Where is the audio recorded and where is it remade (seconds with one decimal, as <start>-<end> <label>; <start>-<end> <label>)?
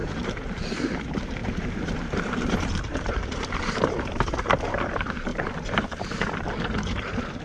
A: 0.0-7.4 remade